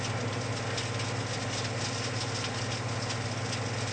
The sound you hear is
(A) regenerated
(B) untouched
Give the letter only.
B